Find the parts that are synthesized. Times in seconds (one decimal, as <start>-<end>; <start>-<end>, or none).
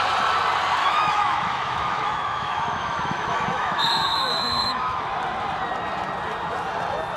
0.8-5.1